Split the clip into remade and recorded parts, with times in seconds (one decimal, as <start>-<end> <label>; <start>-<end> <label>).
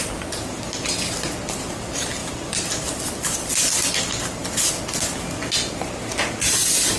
0.0-0.6 remade; 0.6-2.2 recorded; 2.2-2.7 remade; 2.7-7.0 recorded